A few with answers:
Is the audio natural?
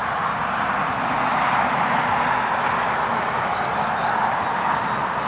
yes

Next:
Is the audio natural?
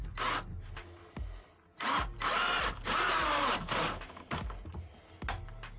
yes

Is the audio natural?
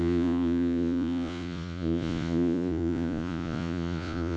no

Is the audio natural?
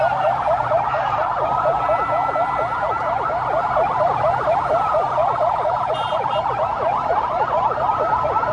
yes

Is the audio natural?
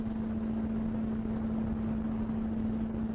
yes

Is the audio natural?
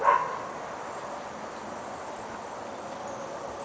yes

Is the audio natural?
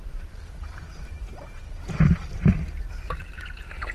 no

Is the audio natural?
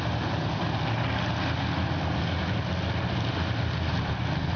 yes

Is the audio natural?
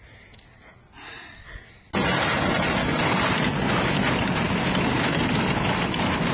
yes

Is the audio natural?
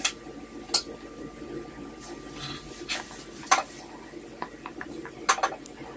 yes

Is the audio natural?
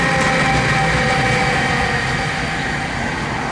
yes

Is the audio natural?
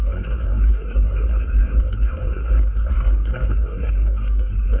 no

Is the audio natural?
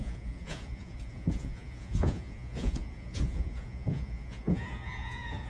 no